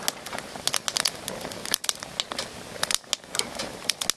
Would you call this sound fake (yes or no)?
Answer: no